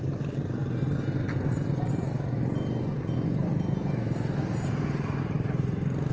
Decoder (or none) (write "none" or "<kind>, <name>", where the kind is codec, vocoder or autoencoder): none